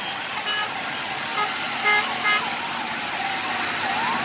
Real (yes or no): yes